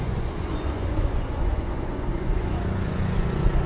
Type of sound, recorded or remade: remade